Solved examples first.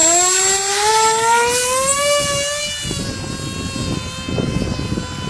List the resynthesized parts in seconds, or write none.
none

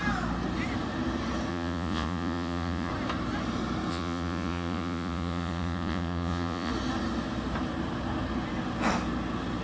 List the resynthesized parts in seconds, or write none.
1.5-2.9 (vocoder, Vocos); 3.9-6.7